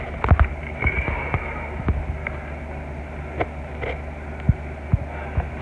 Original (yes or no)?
yes